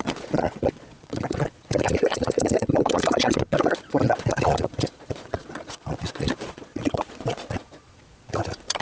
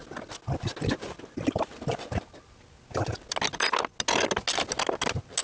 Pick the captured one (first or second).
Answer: second